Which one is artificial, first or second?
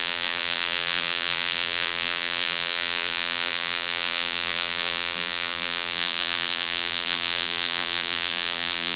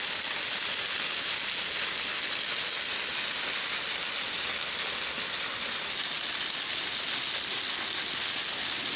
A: first